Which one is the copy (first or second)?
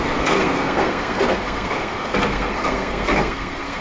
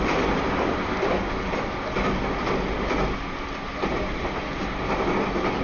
first